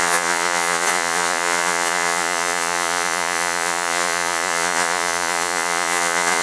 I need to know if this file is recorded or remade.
remade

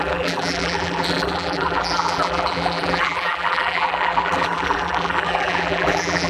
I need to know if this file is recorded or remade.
remade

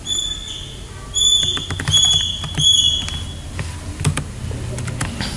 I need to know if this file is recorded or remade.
recorded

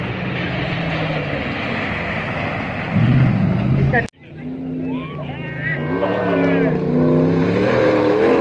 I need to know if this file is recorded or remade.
recorded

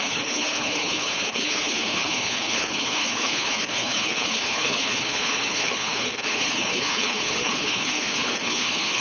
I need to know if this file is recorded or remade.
remade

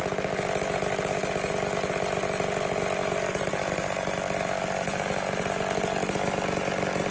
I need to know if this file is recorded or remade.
recorded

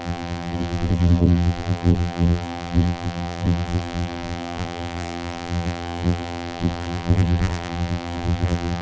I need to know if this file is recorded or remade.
remade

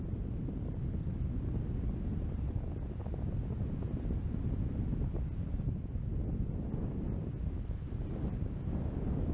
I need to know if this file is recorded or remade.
recorded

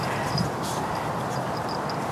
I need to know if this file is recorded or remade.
recorded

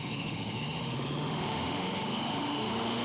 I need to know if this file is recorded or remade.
remade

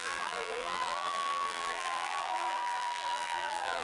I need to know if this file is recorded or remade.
remade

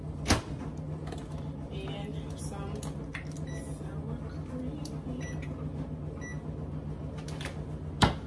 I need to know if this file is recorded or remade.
recorded